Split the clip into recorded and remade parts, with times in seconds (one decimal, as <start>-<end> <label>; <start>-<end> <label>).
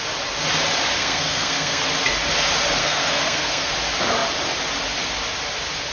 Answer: 0.0-1.0 recorded; 1.0-1.8 remade; 1.8-2.8 recorded; 2.8-3.7 remade; 3.7-5.9 recorded